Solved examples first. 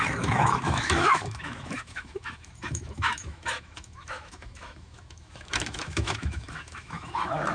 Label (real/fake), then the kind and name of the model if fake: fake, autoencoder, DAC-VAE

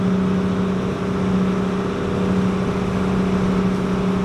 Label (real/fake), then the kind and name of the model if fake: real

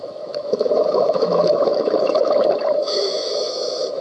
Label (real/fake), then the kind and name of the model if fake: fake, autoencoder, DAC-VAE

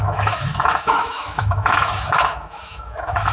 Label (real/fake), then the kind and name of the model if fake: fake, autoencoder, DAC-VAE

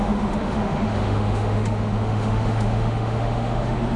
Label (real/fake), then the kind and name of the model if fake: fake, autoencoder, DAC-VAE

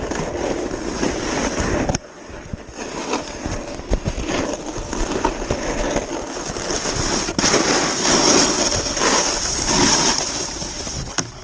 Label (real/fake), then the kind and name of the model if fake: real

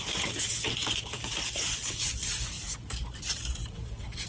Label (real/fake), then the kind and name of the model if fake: real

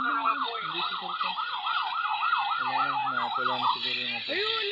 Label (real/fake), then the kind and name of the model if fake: real